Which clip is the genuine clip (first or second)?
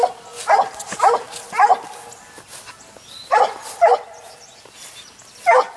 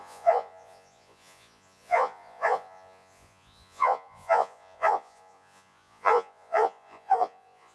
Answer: first